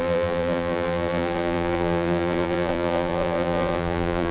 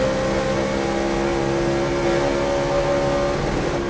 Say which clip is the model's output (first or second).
first